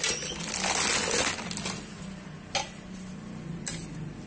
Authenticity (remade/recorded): recorded